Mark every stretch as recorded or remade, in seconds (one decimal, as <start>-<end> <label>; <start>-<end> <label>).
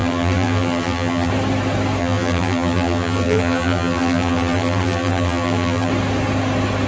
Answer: 0.0-1.3 remade; 1.3-2.0 recorded; 2.0-5.9 remade; 5.9-6.9 recorded